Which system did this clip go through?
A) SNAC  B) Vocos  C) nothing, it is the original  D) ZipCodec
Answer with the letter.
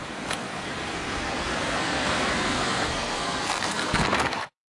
A